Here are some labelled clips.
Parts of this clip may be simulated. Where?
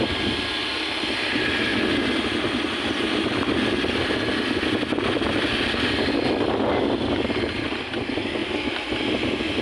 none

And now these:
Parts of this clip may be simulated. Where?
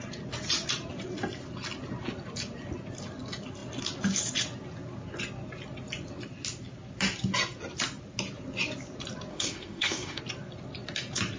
9.3-10.2 (autoencoder, DAC-VAE)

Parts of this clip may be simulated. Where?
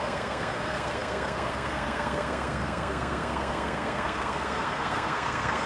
0.0-5.7 (codec, SNAC)